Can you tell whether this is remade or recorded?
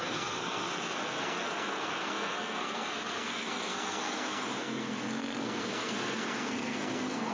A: remade